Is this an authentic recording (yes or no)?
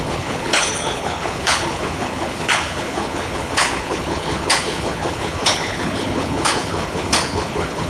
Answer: no